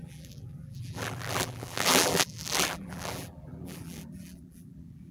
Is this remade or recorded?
remade